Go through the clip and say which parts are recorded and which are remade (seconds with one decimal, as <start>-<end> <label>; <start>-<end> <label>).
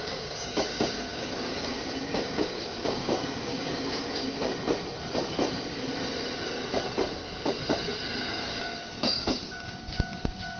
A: 0.0-4.5 remade; 4.5-8.3 recorded; 8.3-10.6 remade